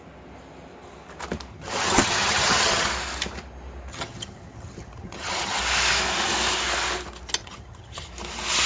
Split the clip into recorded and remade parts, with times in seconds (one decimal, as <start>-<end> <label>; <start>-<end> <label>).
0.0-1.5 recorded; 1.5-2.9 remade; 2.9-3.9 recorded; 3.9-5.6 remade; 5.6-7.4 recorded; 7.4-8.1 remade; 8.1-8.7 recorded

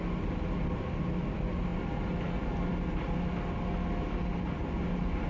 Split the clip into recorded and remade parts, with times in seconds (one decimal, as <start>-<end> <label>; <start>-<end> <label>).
0.0-5.3 recorded

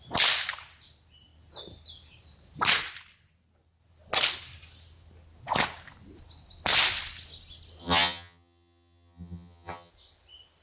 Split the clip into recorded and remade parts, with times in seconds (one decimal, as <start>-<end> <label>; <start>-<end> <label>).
0.0-7.8 recorded; 7.8-9.9 remade; 9.9-10.6 recorded

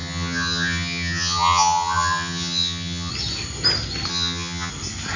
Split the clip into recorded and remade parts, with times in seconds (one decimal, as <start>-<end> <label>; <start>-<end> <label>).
0.0-3.1 remade; 3.1-4.1 recorded; 4.1-4.7 remade; 4.7-5.2 recorded